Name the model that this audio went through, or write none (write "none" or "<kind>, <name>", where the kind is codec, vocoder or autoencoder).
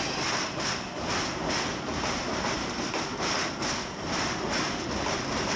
none